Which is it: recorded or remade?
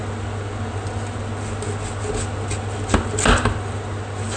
recorded